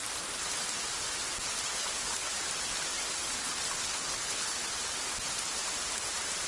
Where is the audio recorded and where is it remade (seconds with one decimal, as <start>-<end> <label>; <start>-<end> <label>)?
0.0-1.6 recorded; 1.6-2.3 remade; 2.3-3.4 recorded; 3.4-4.6 remade; 4.6-6.5 recorded